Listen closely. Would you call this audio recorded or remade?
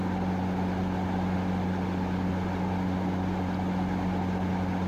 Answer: recorded